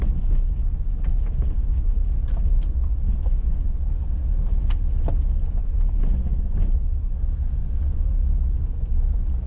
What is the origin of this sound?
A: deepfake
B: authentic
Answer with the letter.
B